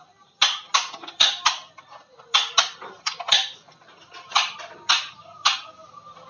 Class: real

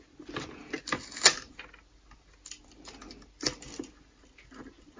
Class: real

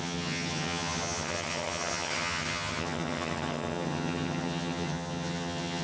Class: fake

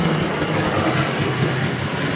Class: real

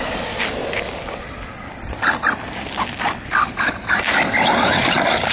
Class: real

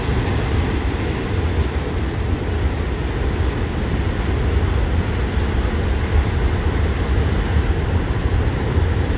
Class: real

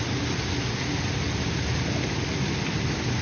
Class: real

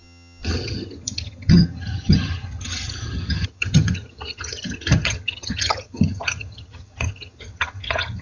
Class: fake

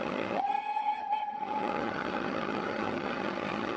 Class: fake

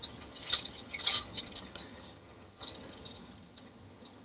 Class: fake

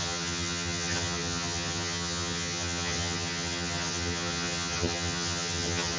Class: fake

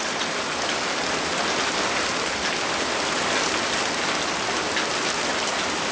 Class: real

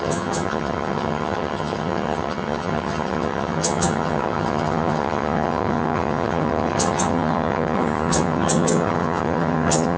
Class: fake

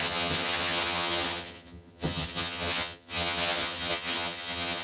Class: fake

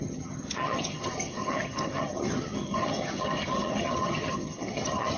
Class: fake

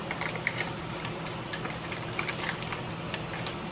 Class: real